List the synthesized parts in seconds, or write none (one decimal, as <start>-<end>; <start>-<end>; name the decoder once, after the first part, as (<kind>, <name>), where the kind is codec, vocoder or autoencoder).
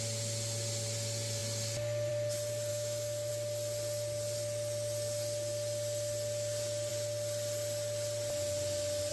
2.7-3.3 (autoencoder, DAC-VAE)